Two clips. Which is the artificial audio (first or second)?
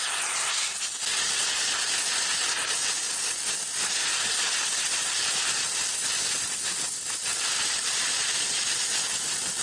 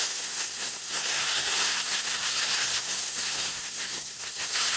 second